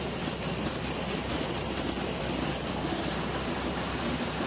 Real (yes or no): yes